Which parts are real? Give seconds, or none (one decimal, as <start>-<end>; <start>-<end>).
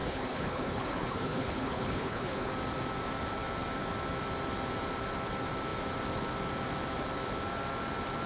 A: 2.5-8.3